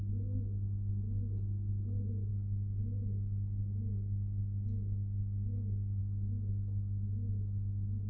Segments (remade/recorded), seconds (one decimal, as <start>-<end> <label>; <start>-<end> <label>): 0.0-8.1 recorded